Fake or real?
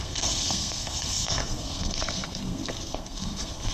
fake